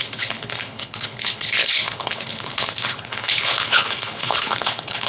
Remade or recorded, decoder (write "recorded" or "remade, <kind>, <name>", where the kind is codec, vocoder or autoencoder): remade, codec, HILCodec